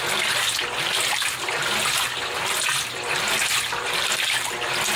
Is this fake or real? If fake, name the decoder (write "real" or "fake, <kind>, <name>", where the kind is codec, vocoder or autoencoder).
real